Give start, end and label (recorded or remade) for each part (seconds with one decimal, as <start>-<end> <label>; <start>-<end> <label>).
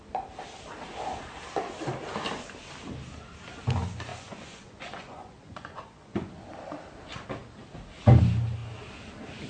0.0-4.1 recorded; 4.1-6.3 remade; 6.3-9.5 recorded